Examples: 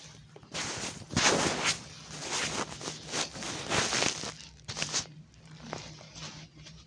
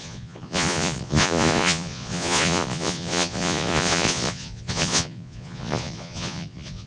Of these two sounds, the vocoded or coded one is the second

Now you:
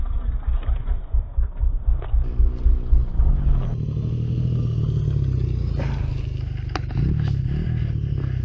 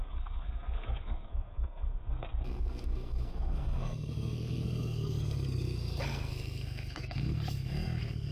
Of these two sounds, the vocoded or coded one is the second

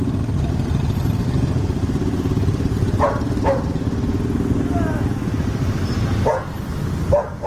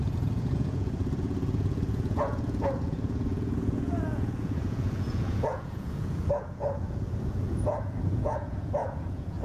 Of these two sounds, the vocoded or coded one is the second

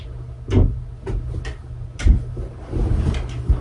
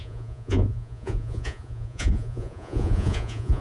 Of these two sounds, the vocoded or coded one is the second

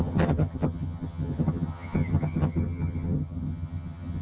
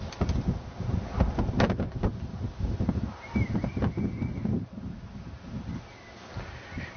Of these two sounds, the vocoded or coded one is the first